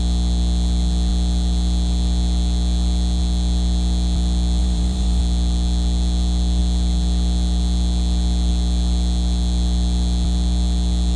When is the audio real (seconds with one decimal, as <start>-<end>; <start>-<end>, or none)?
0.0-4.6; 5.2-11.2